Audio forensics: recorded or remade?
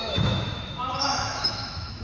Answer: remade